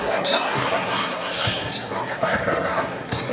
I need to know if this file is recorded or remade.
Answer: remade